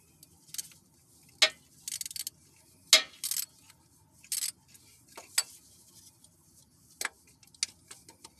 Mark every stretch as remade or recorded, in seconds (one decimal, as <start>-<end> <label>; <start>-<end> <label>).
0.0-8.4 recorded